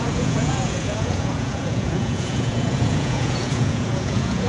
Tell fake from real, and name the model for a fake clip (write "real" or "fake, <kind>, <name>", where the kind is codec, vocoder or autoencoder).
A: fake, vocoder, Vocos